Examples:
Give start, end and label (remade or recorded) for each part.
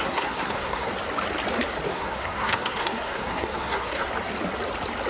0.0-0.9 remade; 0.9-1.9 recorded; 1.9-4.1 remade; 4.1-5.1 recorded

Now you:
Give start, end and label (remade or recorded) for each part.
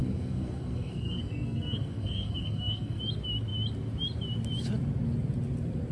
0.0-3.0 remade; 3.0-5.9 recorded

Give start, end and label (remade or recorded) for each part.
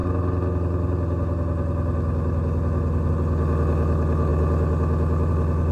0.0-5.7 recorded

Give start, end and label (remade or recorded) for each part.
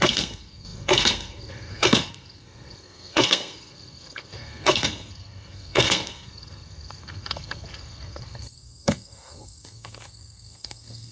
0.0-11.1 remade